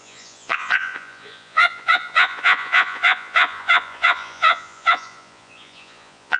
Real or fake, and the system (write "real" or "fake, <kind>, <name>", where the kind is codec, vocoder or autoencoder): fake, vocoder, Vocos